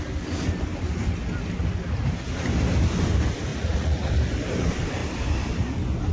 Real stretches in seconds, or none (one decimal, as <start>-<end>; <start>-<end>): 0.0-3.5; 4.1-6.1